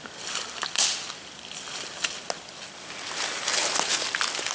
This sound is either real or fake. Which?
real